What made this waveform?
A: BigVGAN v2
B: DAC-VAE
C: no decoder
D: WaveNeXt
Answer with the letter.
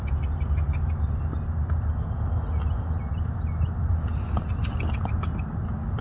C